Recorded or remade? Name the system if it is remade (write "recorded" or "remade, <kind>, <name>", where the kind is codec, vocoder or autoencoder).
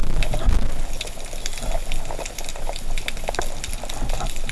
recorded